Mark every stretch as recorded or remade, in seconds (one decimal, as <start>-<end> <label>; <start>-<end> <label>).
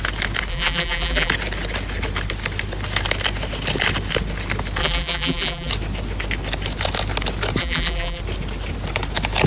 0.0-0.5 recorded; 0.5-1.3 remade; 1.3-4.8 recorded; 4.8-5.7 remade; 5.7-7.6 recorded; 7.6-8.2 remade; 8.2-9.5 recorded